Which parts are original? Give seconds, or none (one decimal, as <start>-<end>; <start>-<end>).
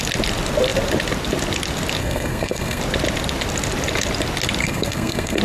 0.0-2.0; 2.8-4.6